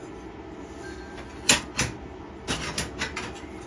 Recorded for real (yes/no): yes